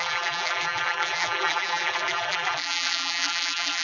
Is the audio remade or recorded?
remade